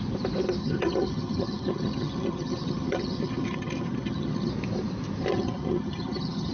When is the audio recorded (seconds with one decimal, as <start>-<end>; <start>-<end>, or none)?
0.0-0.6; 4.5-5.3